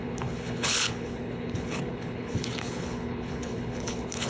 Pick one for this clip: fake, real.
fake